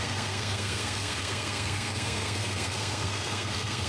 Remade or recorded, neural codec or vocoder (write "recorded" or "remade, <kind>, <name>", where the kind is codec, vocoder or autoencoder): remade, codec, SNAC